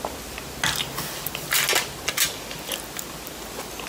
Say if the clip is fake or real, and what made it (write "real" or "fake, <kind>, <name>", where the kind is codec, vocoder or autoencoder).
real